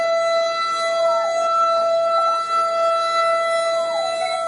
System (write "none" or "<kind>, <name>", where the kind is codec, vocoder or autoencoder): none